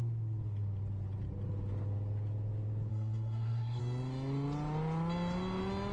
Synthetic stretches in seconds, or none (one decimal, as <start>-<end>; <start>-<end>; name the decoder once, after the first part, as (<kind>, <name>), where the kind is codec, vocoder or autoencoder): 2.9-3.8 (codec, SNAC)